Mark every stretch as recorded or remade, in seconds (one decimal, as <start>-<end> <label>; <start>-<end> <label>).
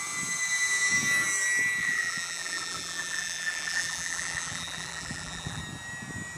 0.0-1.8 recorded; 1.8-5.6 remade; 5.6-6.4 recorded